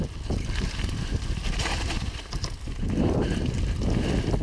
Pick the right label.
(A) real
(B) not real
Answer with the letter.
A